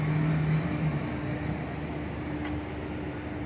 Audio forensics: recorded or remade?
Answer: recorded